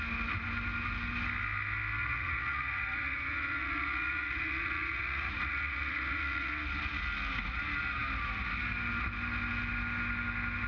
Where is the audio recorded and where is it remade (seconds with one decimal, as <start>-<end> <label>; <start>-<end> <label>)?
0.0-2.0 recorded; 2.0-6.5 remade; 6.5-10.7 recorded